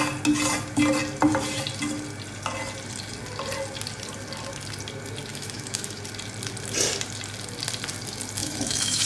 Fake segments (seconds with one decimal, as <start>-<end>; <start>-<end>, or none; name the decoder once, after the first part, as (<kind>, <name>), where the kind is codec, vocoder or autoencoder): 5.3-6.0 (autoencoder, DAC-VAE); 8.4-9.1